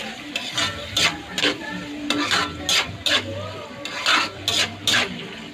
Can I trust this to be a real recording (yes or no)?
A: yes